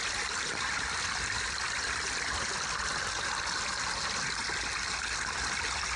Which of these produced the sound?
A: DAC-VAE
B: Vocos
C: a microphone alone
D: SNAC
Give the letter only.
C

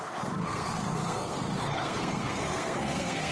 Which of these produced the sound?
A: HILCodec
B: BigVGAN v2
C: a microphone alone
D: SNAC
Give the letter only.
D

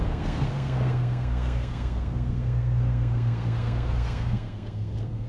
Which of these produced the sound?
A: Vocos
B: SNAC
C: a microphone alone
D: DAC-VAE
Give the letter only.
B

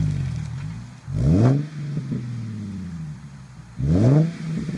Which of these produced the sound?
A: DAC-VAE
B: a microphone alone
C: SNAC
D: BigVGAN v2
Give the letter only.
B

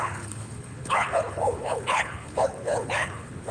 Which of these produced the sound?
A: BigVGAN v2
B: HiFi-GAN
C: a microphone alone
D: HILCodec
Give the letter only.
D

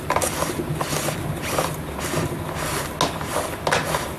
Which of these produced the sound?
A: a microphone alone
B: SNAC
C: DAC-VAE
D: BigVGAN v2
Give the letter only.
A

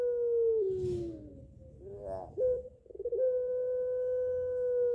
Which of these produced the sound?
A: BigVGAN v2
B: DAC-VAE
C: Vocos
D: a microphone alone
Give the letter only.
D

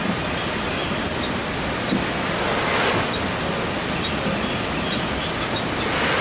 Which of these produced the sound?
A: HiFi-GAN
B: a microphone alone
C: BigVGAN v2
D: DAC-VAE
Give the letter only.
B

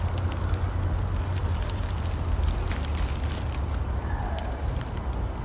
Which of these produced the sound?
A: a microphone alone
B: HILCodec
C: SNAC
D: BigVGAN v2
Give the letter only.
A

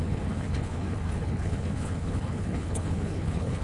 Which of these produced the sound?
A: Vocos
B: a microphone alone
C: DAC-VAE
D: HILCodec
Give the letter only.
D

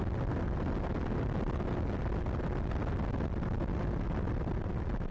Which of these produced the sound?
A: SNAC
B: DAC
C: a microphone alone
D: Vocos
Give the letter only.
C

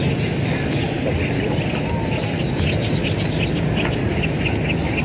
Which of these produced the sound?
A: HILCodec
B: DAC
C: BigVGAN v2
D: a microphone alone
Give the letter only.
D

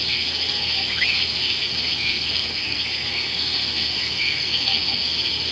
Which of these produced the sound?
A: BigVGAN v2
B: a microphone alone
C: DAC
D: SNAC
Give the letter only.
D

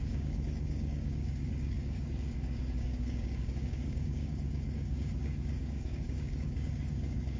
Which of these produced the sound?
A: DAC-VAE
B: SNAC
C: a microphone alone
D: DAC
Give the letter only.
D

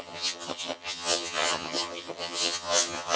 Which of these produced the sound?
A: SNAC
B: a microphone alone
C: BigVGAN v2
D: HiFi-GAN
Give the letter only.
D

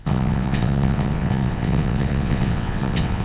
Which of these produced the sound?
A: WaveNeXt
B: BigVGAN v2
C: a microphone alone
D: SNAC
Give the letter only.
A